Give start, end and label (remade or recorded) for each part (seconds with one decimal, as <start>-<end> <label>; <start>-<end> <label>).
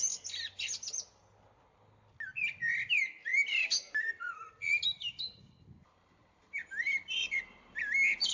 0.0-8.3 recorded